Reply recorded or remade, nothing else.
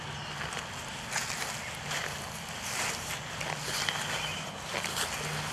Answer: recorded